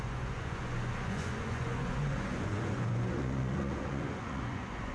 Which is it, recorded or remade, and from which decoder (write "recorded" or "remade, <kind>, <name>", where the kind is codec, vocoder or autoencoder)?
remade, vocoder, Vocos